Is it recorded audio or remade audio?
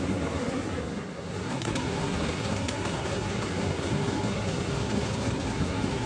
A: remade